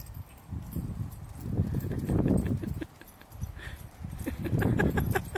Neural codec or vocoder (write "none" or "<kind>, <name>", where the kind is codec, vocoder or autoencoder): none